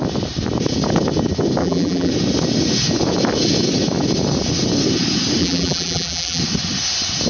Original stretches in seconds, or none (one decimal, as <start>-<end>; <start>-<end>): 0.0-1.6; 2.1-5.4; 6.4-7.3